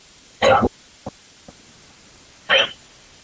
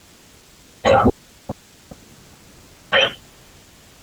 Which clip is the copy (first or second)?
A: first